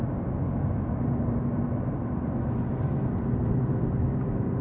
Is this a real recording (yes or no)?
yes